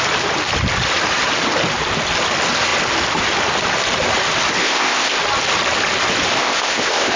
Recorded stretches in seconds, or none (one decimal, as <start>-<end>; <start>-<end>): 0.0-4.6; 5.2-6.4

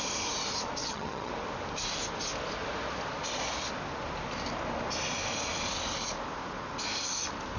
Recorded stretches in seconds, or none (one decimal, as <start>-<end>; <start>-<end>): 0.0-0.8; 1.3-7.6

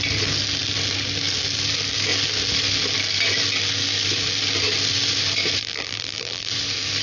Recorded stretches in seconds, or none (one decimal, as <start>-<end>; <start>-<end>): 0.0-5.6; 6.5-7.0

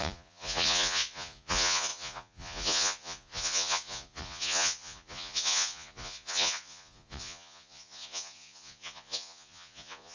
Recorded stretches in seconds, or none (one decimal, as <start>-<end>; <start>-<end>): none